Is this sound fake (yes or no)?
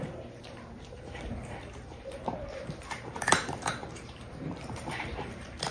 yes